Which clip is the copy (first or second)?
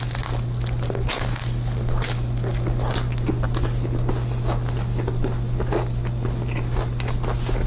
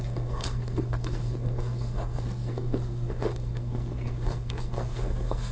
second